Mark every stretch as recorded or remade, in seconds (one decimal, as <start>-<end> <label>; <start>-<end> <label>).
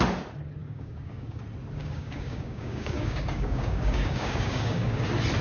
0.0-0.6 recorded; 0.6-1.4 remade; 1.4-1.8 recorded; 1.8-5.0 remade; 5.0-5.4 recorded